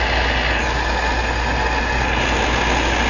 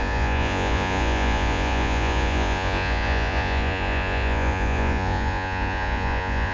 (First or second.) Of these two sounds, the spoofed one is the second